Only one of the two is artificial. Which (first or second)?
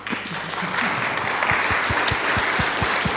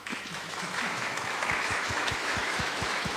second